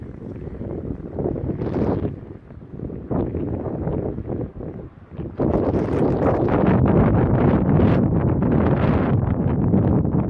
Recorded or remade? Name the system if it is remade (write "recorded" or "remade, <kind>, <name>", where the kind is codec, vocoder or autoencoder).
recorded